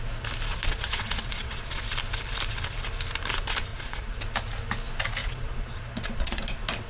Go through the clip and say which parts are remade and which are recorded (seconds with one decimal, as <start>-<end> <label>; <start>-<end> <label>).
0.0-0.5 recorded; 0.5-1.8 remade; 1.8-3.7 recorded; 3.7-4.2 remade; 4.2-5.2 recorded; 5.2-6.4 remade; 6.4-6.9 recorded